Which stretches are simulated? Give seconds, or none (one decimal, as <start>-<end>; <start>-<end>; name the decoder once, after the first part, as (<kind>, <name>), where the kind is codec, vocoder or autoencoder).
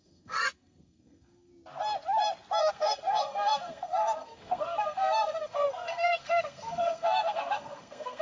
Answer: 0.0-1.5 (codec, SNAC); 2.7-8.2